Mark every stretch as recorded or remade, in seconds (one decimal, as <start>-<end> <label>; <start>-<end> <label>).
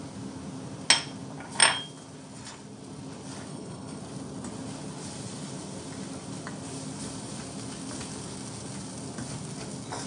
0.0-3.5 recorded; 3.5-4.0 remade; 4.0-10.1 recorded